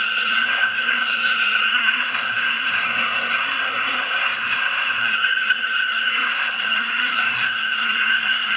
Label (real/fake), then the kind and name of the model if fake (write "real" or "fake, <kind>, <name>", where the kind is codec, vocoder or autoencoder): fake, codec, SNAC